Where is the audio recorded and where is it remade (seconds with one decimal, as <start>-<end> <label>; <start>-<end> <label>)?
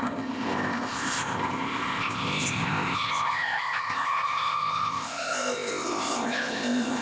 0.0-7.0 remade